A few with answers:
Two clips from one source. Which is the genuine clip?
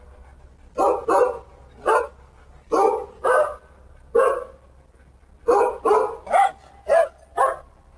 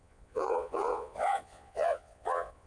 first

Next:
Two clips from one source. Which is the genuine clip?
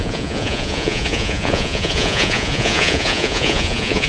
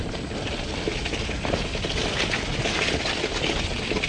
second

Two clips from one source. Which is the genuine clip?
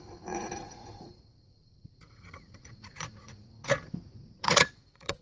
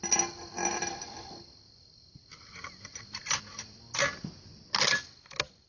second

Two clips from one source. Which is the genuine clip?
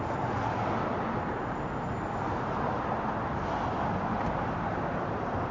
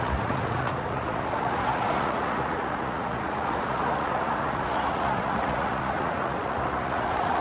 first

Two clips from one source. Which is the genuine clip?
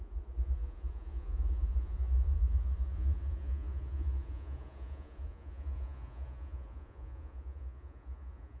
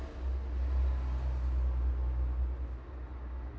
second